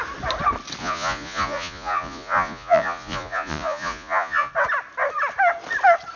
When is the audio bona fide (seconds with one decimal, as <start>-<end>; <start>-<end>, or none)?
0.0-0.8; 4.5-6.2